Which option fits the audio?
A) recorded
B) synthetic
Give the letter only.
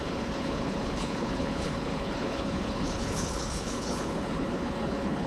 B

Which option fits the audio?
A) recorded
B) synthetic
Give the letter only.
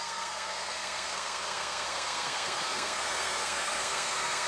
B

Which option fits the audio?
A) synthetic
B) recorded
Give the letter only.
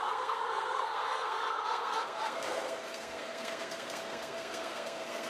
A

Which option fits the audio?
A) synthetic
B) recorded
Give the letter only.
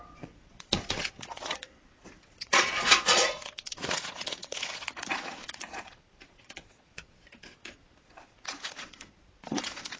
A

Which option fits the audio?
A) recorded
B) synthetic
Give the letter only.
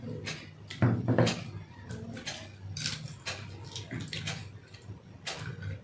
A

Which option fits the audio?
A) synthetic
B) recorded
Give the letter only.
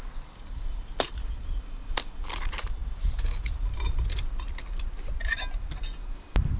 B